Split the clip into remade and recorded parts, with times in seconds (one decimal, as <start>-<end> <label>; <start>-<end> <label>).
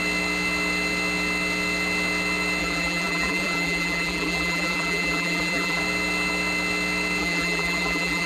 0.0-2.6 recorded; 2.6-5.8 remade; 5.8-7.2 recorded; 7.2-8.3 remade